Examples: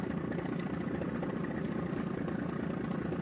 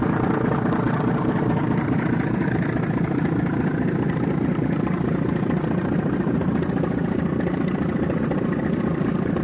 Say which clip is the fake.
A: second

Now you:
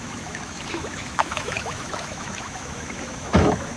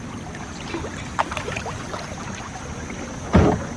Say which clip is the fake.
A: first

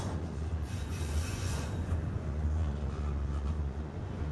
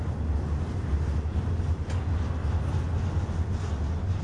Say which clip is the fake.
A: first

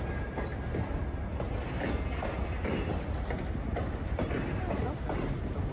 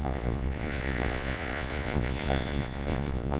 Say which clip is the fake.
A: second